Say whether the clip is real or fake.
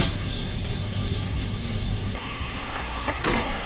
fake